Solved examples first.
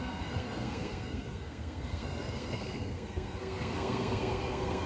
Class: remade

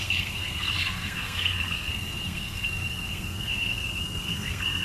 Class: remade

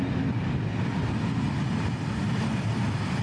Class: recorded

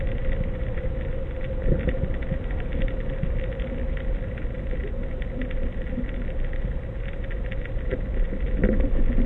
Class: recorded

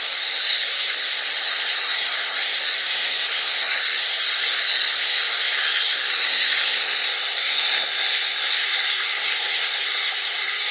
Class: remade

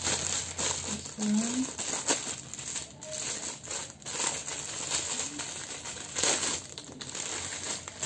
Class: recorded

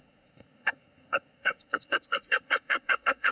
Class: remade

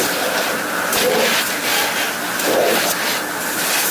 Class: recorded